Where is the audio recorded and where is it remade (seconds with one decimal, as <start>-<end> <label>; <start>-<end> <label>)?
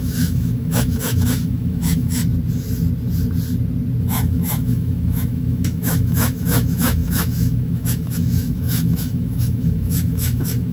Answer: 0.0-2.2 remade; 2.2-4.0 recorded; 4.0-10.7 remade